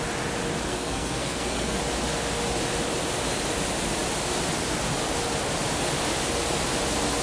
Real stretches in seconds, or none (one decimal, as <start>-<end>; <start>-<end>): 0.0-0.7; 1.8-7.2